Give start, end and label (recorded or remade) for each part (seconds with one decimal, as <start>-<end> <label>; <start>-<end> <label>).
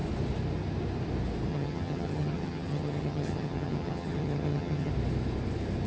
0.0-1.5 recorded; 1.5-4.9 remade; 4.9-5.9 recorded